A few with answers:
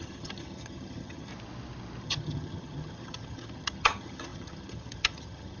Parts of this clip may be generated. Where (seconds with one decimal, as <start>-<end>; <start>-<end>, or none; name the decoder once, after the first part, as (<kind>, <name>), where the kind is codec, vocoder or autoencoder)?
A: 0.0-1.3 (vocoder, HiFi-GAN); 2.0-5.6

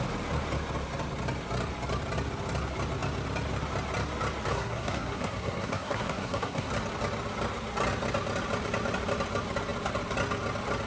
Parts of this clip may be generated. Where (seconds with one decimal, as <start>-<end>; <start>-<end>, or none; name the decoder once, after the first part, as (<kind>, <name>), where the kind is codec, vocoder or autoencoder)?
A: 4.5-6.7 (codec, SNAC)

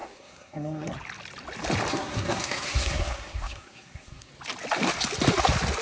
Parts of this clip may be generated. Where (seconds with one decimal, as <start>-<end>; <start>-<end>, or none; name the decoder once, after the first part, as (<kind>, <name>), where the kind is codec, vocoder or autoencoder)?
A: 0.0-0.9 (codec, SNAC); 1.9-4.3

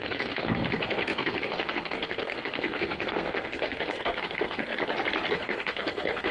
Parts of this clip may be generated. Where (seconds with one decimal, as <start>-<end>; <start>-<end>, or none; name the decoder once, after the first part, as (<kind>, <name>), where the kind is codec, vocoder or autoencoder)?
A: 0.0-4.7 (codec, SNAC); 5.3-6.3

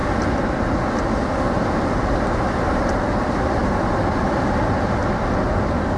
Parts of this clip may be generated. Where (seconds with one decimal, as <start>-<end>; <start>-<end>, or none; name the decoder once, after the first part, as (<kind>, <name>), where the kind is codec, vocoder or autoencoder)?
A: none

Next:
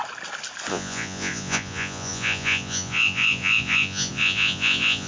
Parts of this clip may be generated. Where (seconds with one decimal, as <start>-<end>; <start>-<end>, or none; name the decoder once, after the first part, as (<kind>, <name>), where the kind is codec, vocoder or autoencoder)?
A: 0.7-5.1 (vocoder, Vocos)

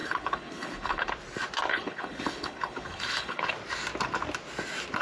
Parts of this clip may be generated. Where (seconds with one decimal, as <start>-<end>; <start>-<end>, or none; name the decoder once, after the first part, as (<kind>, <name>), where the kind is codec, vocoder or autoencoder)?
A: 0.0-1.1 (codec, HILCodec); 1.7-3.4